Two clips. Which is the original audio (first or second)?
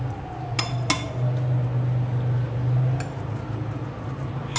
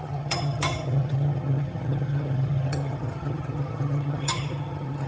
first